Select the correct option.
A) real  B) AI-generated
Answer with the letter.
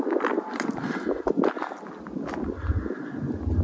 A